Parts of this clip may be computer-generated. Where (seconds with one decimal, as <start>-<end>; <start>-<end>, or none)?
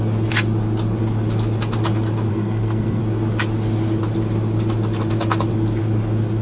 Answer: 2.3-3.0